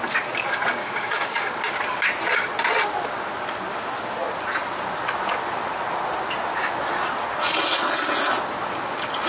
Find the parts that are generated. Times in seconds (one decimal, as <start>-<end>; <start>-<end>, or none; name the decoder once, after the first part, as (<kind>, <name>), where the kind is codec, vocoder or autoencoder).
0.8-1.5 (codec, DAC)